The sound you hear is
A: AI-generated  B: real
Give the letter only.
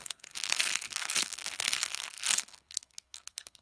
A